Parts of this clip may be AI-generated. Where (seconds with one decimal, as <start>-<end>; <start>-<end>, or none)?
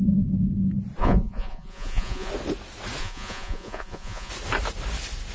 1.0-2.3; 3.0-4.3